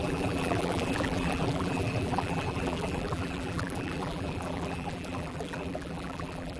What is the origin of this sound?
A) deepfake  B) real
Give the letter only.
A